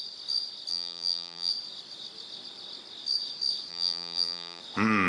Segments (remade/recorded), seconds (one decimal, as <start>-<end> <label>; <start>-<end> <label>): 0.0-0.7 recorded; 0.7-1.5 remade; 1.5-3.7 recorded; 3.7-4.6 remade; 4.6-5.1 recorded